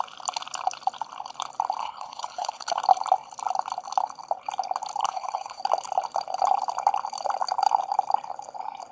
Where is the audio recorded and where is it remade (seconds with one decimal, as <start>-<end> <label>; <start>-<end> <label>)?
0.0-1.8 recorded; 1.8-2.8 remade; 2.8-5.0 recorded; 5.0-5.6 remade; 5.6-8.9 recorded